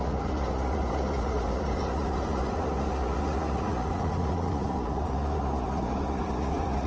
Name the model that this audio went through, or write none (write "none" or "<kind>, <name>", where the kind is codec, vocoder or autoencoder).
vocoder, Vocos